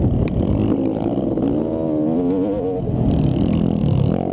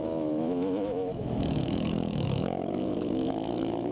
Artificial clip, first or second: second